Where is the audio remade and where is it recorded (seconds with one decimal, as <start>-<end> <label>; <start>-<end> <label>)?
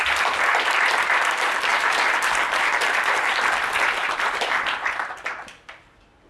0.0-1.7 recorded; 1.7-5.3 remade; 5.3-6.3 recorded